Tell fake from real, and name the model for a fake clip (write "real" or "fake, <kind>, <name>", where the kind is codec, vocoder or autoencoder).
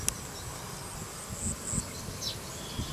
real